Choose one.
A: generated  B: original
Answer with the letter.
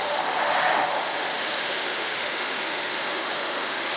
A